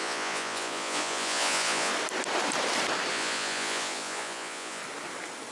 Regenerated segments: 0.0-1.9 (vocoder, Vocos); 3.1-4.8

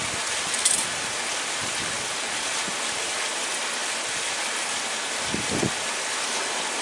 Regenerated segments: none

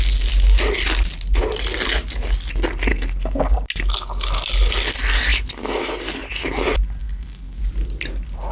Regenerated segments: 2.9-3.4 (codec, SNAC); 7.0-7.6